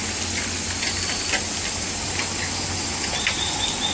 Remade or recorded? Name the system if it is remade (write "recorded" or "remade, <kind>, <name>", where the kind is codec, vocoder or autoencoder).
recorded